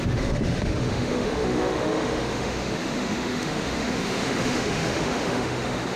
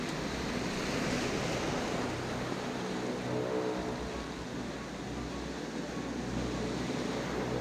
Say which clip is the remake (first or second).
first